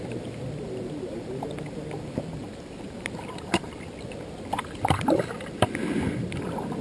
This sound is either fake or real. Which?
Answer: fake